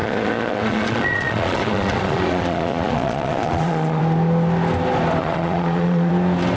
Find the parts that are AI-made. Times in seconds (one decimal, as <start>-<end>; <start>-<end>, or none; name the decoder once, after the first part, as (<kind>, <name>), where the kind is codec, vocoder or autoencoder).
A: 0.0-4.0 (vocoder, Vocos); 5.2-6.1